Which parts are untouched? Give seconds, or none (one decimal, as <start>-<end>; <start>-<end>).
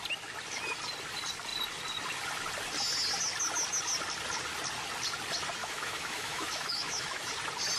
0.0-5.6; 7.3-7.8